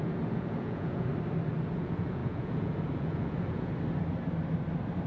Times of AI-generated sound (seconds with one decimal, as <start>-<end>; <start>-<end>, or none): 0.0-1.1; 1.7-3.7